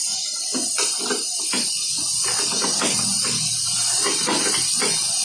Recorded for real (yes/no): yes